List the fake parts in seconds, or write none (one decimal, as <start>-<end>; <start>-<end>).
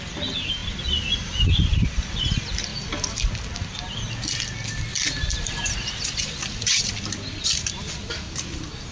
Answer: 2.7-3.3; 4.9-7.0